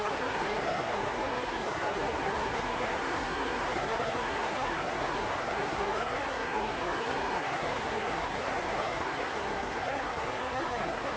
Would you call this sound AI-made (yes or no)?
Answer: yes